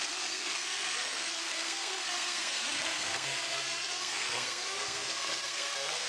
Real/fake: fake